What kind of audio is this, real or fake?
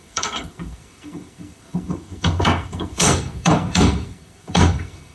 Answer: fake